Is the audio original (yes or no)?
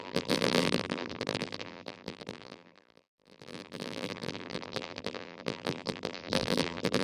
no